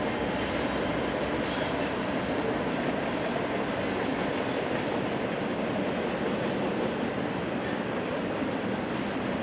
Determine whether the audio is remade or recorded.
recorded